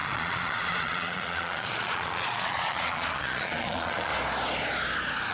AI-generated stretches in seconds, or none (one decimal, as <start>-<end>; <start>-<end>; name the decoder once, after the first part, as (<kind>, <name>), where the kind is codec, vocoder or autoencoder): 0.0-4.1 (vocoder, Vocos)